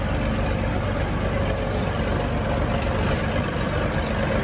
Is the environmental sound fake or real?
real